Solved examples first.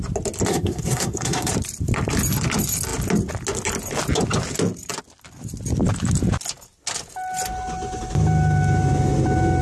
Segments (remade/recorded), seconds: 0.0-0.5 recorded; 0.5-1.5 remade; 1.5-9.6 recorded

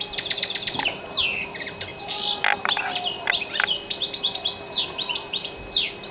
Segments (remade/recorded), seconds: 0.0-6.1 recorded

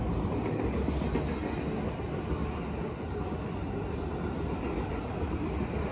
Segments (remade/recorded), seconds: 0.0-5.9 recorded

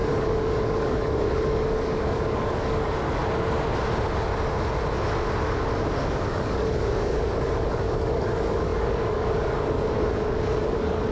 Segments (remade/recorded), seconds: 0.0-3.2 remade; 3.2-6.3 recorded; 6.3-11.1 remade

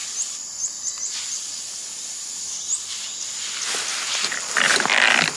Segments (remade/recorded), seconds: 0.0-5.4 recorded